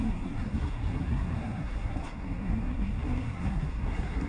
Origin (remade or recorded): remade